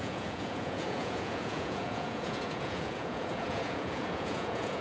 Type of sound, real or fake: fake